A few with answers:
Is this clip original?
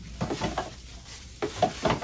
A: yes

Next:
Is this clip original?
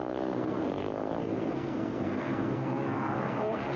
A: no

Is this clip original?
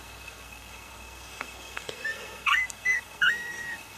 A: no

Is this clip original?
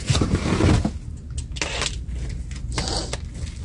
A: yes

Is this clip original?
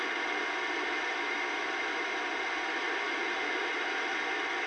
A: yes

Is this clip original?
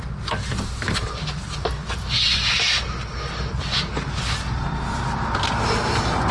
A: yes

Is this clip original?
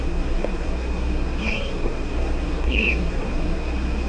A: no